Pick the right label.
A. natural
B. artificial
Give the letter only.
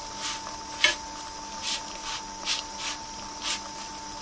A